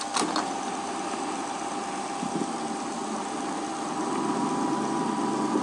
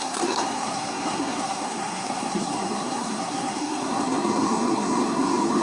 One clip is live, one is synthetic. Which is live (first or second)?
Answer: first